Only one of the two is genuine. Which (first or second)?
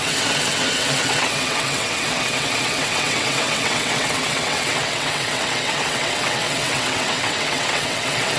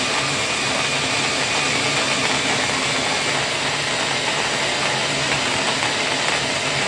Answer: second